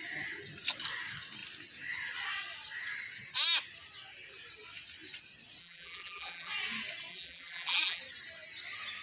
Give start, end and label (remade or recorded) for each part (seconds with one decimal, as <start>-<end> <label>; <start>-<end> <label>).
0.0-5.6 recorded; 5.6-6.5 remade; 6.5-7.1 recorded; 7.1-8.0 remade; 8.0-9.0 recorded